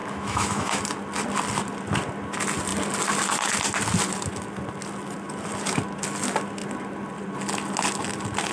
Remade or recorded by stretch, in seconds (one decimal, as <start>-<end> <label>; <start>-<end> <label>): 0.0-0.8 remade; 0.8-8.5 recorded